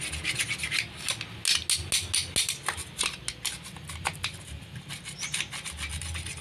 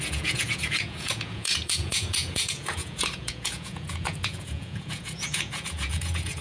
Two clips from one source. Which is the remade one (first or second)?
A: second